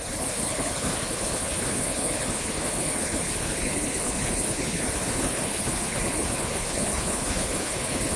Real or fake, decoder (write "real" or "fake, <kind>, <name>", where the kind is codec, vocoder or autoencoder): fake, codec, HILCodec